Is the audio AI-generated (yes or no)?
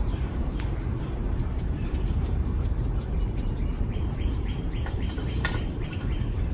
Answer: yes